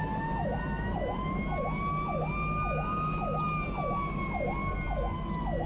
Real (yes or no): yes